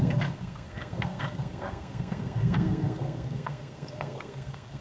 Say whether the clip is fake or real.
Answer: fake